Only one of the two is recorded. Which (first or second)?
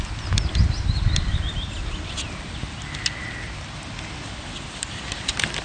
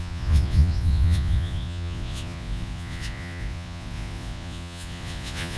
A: first